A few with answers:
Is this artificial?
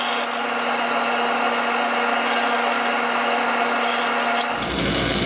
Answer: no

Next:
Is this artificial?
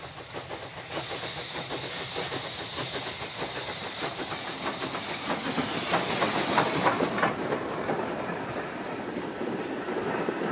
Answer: no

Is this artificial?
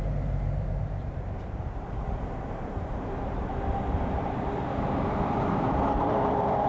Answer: yes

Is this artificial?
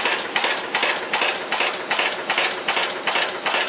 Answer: no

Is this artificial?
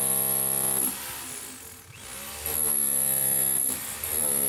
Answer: no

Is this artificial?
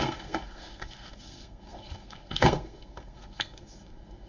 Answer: yes